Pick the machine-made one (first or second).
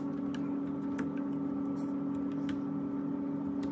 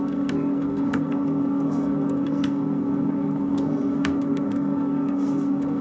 second